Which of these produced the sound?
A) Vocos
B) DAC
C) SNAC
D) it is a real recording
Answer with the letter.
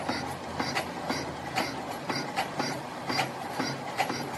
D